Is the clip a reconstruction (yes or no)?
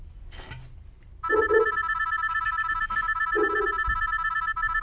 no